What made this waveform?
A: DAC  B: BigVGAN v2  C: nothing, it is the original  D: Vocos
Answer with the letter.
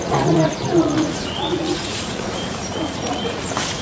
D